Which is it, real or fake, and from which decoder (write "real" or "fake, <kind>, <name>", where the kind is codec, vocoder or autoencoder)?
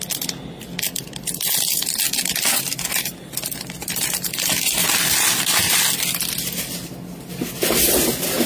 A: real